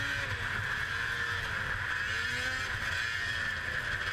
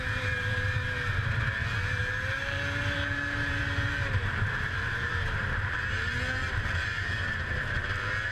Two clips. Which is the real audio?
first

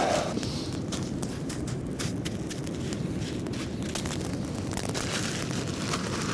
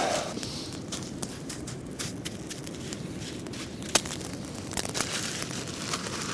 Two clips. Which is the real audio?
first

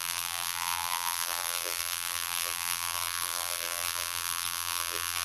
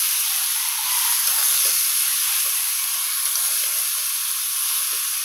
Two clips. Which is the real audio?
second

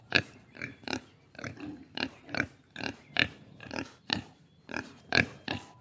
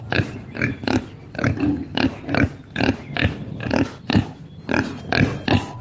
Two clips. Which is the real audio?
second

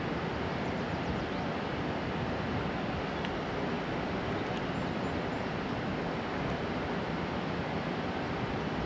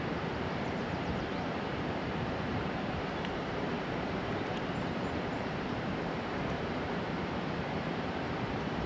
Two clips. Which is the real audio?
first